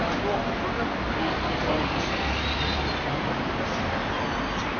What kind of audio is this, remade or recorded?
recorded